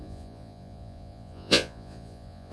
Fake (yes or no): yes